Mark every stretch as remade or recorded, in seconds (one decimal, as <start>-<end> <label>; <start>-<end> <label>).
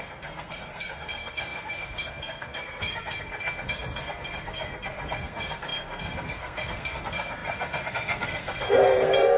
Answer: 0.0-9.4 remade